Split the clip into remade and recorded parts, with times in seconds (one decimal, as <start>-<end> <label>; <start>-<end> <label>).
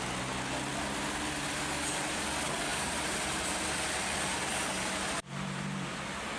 0.0-2.7 recorded; 2.7-3.5 remade; 3.5-6.4 recorded